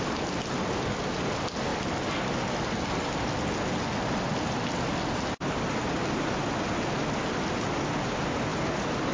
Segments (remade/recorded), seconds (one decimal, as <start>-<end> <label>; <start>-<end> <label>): 0.0-9.1 recorded